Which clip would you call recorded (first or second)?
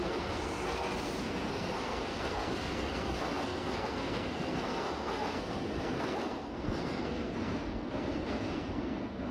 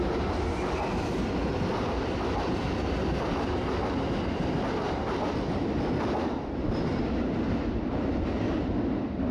second